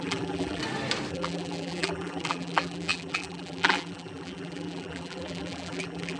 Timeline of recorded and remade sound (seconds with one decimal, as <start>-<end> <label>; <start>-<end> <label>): 0.0-0.6 remade; 0.6-1.1 recorded; 1.1-6.2 remade